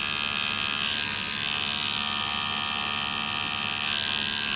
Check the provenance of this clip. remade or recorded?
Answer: recorded